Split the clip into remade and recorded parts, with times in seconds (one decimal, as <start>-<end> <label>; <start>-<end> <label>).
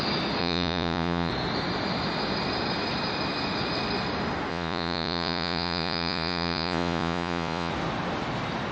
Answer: 0.0-0.4 recorded; 0.4-1.3 remade; 1.3-4.5 recorded; 4.5-7.7 remade; 7.7-8.7 recorded